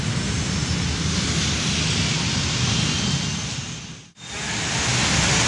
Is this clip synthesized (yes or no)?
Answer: no